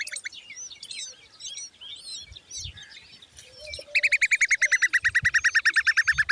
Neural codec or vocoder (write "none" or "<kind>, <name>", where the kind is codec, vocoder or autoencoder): none